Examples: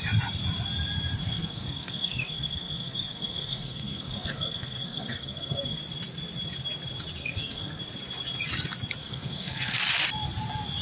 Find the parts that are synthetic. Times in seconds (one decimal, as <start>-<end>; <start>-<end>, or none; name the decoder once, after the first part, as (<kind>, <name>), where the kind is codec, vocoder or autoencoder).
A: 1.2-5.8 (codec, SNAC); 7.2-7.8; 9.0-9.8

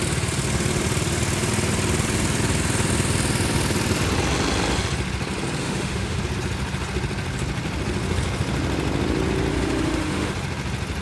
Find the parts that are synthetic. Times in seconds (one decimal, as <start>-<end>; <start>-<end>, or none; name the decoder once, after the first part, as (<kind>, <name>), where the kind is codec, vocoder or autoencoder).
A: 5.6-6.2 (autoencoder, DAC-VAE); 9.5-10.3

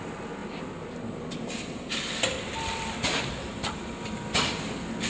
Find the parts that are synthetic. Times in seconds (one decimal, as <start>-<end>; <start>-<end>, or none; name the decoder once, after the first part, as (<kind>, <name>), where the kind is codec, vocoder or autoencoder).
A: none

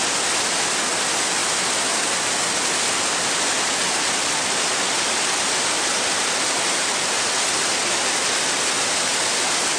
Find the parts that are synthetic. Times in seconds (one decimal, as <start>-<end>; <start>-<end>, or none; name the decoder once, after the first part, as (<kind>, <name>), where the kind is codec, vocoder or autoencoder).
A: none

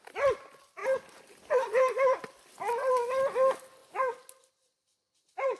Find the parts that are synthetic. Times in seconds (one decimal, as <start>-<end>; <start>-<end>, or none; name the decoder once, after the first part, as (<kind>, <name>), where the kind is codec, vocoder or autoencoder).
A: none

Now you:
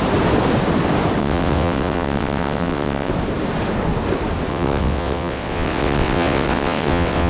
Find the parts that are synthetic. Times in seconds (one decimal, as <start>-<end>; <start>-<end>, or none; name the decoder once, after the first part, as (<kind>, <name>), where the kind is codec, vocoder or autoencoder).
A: 1.2-3.1 (vocoder, WaveNeXt); 4.5-7.3

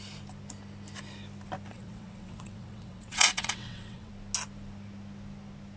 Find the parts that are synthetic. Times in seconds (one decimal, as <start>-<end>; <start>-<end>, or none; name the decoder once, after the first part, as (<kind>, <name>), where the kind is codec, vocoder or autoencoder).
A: 1.7-4.1 (vocoder, WaveNeXt)

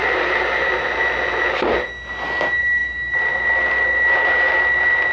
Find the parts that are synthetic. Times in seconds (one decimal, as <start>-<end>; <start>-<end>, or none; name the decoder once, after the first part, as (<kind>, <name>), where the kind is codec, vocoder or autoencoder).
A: none